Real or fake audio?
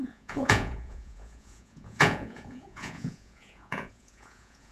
fake